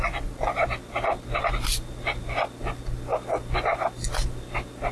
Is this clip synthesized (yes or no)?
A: no